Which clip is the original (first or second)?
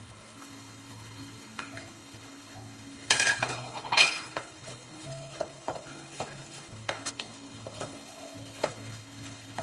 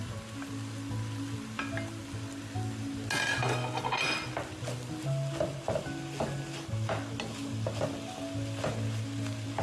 second